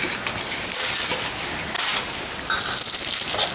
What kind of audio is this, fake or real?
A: real